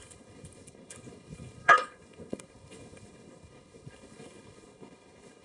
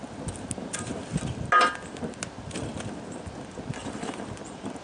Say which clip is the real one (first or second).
second